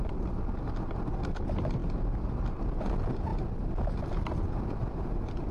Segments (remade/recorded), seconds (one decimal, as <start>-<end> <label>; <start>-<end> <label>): 0.0-5.5 recorded